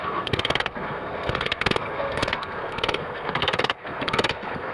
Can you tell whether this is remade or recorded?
remade